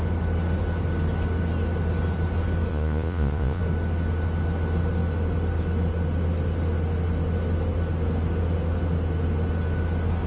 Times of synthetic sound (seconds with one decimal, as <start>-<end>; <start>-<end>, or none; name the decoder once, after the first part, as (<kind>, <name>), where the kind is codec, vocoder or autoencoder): 2.7-3.6 (vocoder, Vocos)